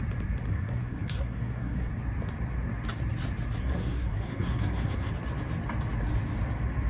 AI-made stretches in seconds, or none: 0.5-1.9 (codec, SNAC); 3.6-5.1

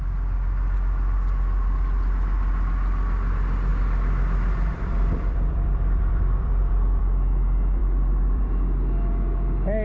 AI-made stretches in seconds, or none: 3.7-7.0 (vocoder, BigVGAN v2); 7.8-8.5

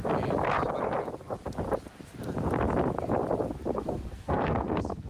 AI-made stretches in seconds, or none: 3.7-5.1 (codec, SNAC)

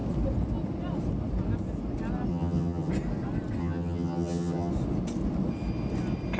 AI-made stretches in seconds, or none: 2.3-2.9 (vocoder, HiFi-GAN); 3.6-4.7

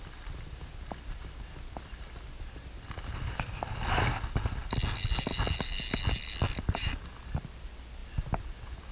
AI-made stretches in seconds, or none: none

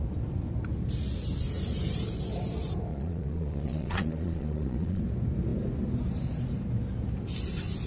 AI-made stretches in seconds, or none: 2.9-5.0 (vocoder, Vocos)